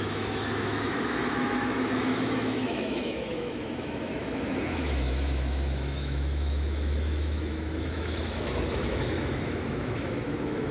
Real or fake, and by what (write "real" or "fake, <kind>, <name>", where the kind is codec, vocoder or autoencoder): fake, autoencoder, DAC-VAE